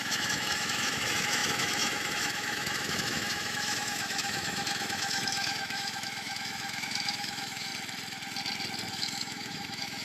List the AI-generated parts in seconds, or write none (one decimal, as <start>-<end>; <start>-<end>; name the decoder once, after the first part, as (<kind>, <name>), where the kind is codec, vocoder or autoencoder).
0.0-7.7 (autoencoder, DAC-VAE); 8.9-10.0